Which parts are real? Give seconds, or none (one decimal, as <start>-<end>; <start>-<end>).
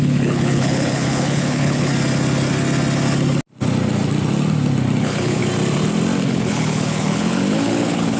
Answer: 1.9-5.0; 5.4-6.2